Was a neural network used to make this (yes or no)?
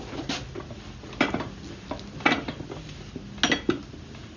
no